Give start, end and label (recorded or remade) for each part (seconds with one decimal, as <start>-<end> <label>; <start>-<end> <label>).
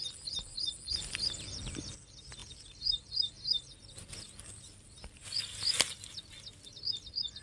0.0-7.4 recorded